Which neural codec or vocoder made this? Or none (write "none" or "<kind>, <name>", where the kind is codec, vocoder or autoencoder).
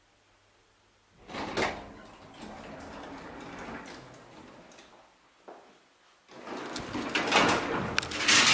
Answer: none